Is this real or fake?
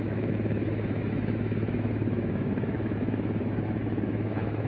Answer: fake